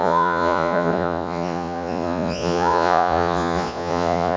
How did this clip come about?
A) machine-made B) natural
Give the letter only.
A